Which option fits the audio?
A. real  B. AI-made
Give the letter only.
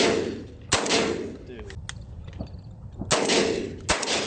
A